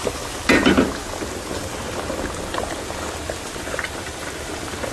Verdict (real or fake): real